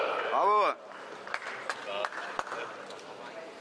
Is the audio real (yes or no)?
yes